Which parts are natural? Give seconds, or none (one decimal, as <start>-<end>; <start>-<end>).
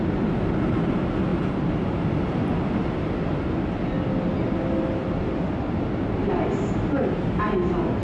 0.0-8.0